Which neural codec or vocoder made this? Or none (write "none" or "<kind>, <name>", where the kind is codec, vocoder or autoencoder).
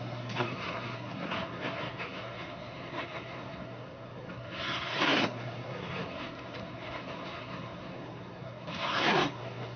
codec, SNAC